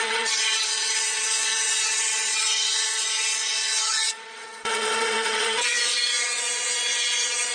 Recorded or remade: remade